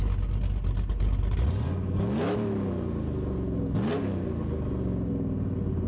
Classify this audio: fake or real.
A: real